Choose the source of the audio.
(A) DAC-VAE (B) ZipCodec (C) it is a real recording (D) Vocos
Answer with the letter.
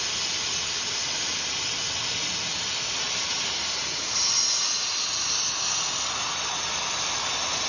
C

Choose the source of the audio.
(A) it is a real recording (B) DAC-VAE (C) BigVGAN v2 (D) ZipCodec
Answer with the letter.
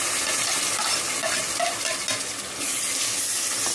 A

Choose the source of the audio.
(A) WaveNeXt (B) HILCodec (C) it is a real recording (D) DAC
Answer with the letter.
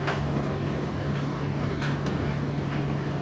D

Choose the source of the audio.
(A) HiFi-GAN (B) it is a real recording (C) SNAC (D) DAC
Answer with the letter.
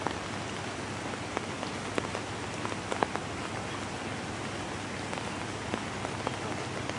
B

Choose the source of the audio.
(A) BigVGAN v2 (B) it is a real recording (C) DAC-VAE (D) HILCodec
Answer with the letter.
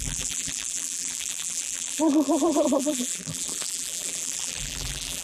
A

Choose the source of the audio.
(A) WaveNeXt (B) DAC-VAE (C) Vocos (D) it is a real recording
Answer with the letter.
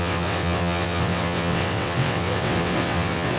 A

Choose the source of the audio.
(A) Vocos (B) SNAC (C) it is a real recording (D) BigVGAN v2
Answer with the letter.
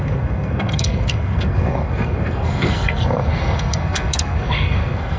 B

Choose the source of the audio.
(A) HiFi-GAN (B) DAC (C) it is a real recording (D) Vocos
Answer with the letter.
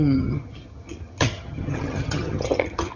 A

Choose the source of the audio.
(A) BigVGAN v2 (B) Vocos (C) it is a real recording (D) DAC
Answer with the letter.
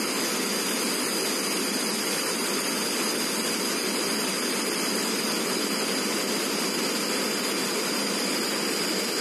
C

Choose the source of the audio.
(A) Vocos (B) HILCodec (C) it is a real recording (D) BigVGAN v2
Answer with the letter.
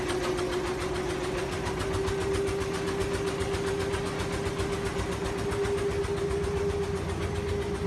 C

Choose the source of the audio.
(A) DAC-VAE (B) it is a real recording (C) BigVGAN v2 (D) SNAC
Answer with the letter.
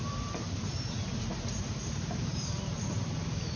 C